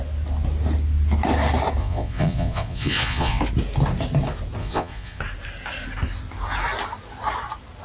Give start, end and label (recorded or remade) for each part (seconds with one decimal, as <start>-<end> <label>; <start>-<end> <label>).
0.0-1.8 recorded; 1.8-3.4 remade; 3.4-4.6 recorded; 4.6-5.2 remade; 5.2-7.8 recorded